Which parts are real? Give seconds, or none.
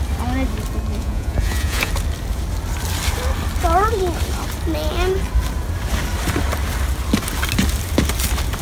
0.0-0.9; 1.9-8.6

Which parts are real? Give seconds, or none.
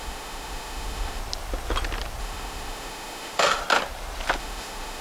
1.2-2.2; 3.6-4.4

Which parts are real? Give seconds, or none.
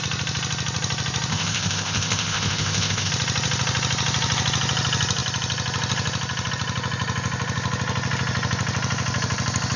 0.0-1.3; 3.1-9.8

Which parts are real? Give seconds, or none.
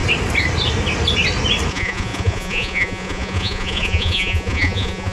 0.0-1.7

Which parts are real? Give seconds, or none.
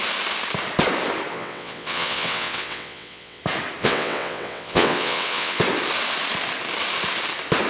0.0-1.3; 3.4-3.8; 5.6-7.7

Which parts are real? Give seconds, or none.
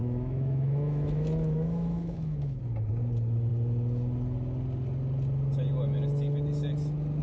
2.6-7.2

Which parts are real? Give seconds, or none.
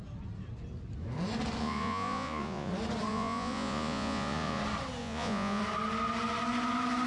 0.0-1.6; 2.7-3.1; 4.6-5.0; 5.6-7.1